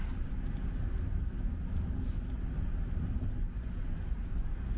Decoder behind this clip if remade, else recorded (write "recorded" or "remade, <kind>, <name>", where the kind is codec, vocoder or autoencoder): recorded